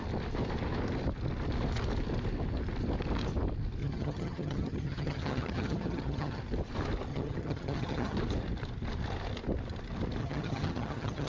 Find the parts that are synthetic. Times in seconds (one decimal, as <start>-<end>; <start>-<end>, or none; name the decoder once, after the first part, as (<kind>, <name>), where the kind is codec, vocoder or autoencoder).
3.8-6.4 (vocoder, HiFi-GAN); 7.1-8.2; 10.2-11.3